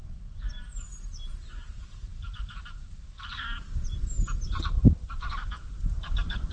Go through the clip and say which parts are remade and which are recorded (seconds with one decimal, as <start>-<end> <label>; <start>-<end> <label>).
0.0-0.5 recorded; 0.5-6.5 remade